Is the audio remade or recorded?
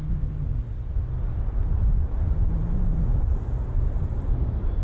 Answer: recorded